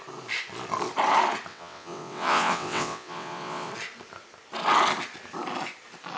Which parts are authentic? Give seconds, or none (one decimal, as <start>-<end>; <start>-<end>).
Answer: 0.0-1.5; 3.7-6.2